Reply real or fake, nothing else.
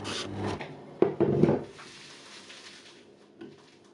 real